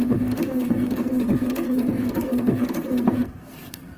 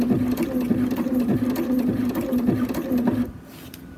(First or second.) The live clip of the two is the second